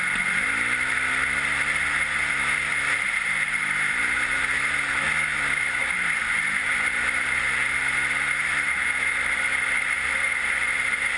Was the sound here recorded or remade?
recorded